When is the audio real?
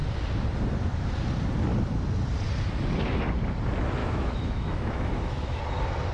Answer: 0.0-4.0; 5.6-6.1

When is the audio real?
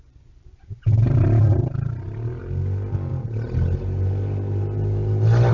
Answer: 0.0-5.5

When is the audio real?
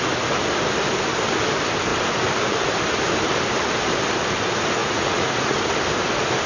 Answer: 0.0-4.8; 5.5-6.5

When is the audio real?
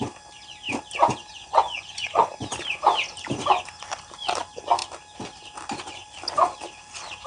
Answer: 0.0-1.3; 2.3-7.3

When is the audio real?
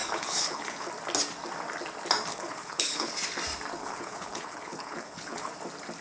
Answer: 0.9-2.3; 3.1-3.8; 5.5-6.0